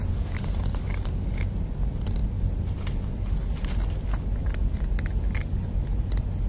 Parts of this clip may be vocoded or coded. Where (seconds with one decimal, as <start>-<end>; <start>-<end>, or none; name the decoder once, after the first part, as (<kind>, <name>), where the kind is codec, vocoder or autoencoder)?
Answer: none